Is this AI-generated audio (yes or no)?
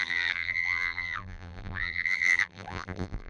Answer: yes